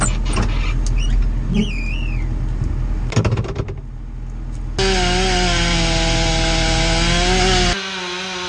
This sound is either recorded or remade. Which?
recorded